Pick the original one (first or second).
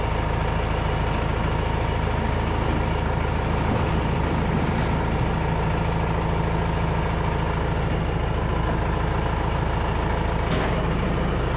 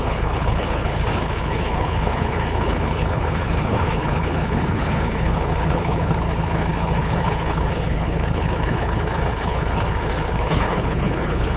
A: first